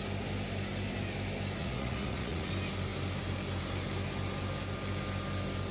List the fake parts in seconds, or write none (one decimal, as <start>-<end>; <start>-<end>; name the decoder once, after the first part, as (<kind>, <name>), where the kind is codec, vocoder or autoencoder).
1.6-2.5 (vocoder, Vocos)